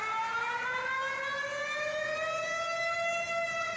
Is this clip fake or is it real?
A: real